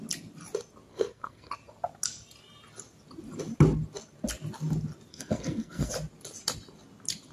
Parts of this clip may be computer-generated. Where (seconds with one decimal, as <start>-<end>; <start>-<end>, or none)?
0.9-1.5; 5.1-5.9